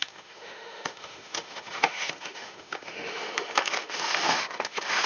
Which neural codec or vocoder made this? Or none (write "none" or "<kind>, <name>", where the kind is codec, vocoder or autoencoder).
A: autoencoder, DAC-VAE